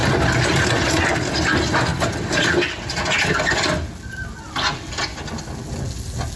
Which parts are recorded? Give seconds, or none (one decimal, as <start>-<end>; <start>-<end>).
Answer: 0.0-6.4